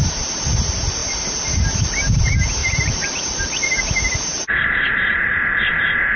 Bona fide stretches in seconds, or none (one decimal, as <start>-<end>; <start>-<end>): 0.0-2.6; 3.8-4.3; 5.4-6.2